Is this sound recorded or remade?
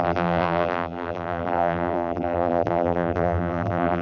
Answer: remade